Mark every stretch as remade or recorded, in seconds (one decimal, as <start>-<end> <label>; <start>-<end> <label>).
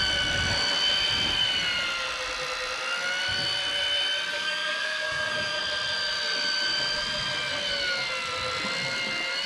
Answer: 0.0-4.3 recorded; 4.3-5.6 remade; 5.6-9.5 recorded